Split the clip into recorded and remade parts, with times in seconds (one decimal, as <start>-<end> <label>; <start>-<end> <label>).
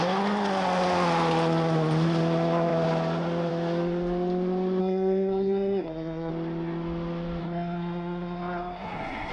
0.0-4.8 recorded; 4.8-6.3 remade; 6.3-7.4 recorded; 7.4-9.3 remade